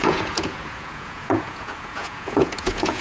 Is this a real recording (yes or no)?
no